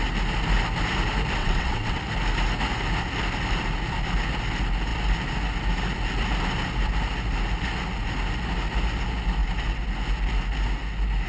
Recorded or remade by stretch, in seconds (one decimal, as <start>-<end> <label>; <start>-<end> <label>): 0.0-1.4 recorded; 1.4-2.0 remade; 2.0-11.3 recorded